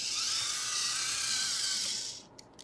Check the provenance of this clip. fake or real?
real